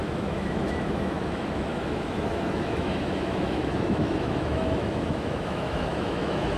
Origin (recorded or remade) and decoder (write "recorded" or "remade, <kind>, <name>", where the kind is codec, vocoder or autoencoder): remade, autoencoder, DAC-VAE